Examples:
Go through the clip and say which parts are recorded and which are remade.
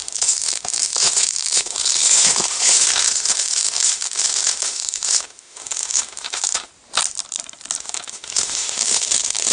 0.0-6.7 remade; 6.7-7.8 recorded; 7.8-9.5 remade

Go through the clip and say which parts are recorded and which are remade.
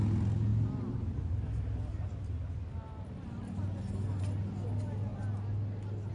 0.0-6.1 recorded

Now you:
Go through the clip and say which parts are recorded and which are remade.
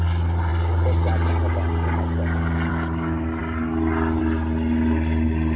0.0-5.6 recorded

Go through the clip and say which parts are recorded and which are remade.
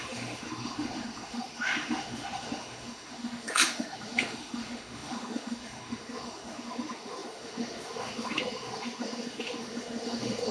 0.0-10.5 remade